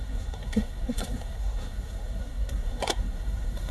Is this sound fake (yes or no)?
yes